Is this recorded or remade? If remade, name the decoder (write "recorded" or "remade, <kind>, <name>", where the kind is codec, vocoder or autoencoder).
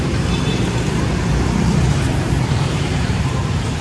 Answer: remade, vocoder, BigVGAN v2